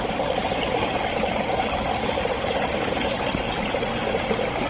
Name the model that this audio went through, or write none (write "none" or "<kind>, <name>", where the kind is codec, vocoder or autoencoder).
none